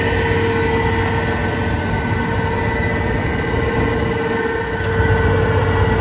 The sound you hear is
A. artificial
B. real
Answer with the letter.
B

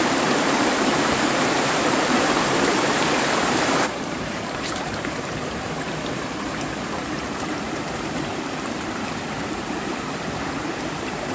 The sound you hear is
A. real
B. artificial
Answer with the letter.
B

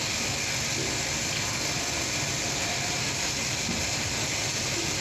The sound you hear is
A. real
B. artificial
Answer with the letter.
A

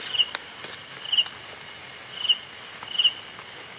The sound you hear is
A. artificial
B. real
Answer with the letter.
B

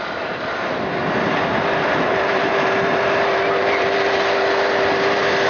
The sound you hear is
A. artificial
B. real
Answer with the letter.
A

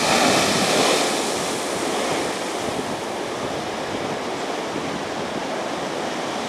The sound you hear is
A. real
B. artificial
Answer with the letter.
A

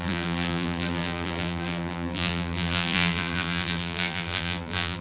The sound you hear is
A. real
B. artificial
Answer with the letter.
B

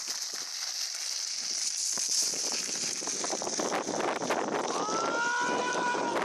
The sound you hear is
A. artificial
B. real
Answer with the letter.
B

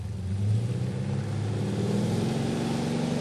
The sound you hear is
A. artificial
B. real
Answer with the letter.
B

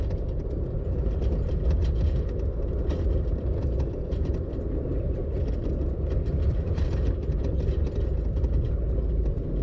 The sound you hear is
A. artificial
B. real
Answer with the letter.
A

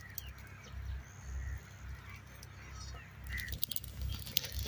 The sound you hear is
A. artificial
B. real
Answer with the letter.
B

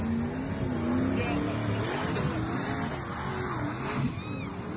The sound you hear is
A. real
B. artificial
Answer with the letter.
A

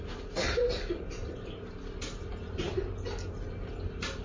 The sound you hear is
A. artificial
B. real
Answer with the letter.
B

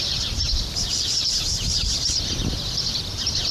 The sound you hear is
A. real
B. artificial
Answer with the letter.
B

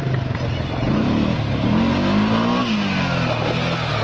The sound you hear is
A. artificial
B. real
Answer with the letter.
B